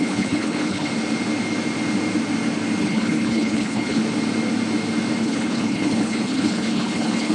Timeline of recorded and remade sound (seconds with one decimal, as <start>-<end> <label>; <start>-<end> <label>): 0.0-0.9 remade; 0.9-2.8 recorded; 2.8-4.0 remade; 4.0-5.2 recorded; 5.2-7.3 remade

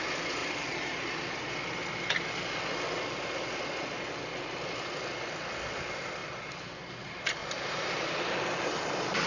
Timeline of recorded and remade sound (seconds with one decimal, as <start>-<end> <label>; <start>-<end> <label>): 0.0-0.4 recorded; 0.4-1.0 remade; 1.0-6.2 recorded; 6.2-6.9 remade; 6.9-7.4 recorded; 7.4-9.3 remade

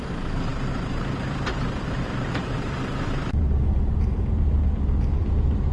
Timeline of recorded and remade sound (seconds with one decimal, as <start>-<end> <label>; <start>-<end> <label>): 0.0-5.7 remade

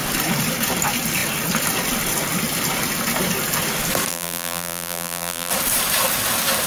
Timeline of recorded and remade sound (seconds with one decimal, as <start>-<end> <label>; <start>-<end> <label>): 0.0-4.1 recorded; 4.1-5.5 remade; 5.5-6.7 recorded

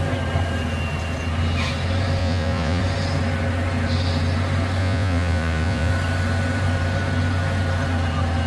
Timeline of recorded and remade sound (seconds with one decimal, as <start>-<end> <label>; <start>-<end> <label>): 0.0-2.2 recorded; 2.2-2.8 remade; 2.8-4.8 recorded; 4.8-5.9 remade; 5.9-8.5 recorded